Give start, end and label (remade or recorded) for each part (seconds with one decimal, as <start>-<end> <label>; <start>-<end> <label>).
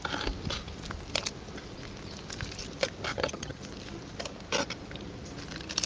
0.0-3.1 recorded; 3.1-3.6 remade; 3.6-5.9 recorded